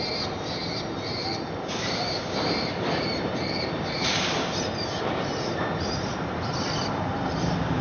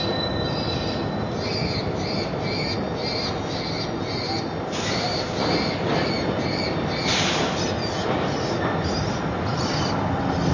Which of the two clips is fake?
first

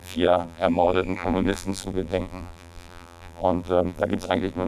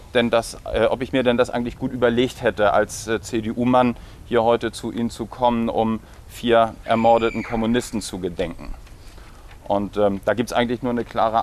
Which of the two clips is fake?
first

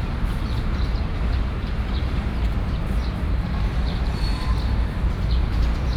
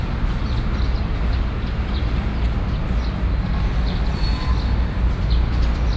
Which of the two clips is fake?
first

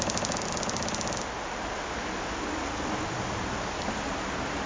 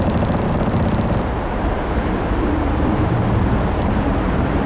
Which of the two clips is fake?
second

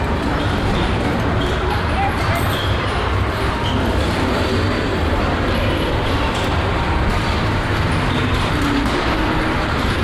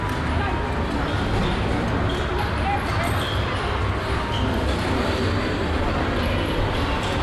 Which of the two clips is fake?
first